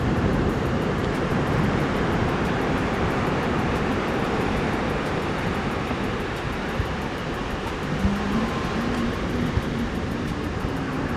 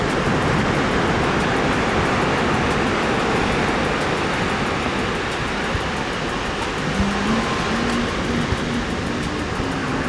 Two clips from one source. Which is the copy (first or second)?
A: first